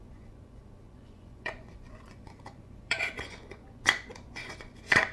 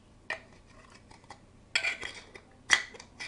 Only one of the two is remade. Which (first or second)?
first